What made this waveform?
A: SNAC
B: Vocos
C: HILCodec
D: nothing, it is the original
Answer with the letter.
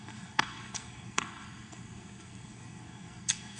A